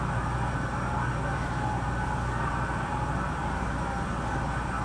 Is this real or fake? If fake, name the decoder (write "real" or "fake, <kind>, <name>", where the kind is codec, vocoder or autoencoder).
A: real